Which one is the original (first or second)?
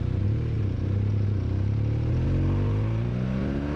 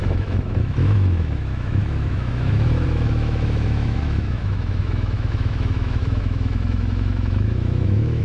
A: first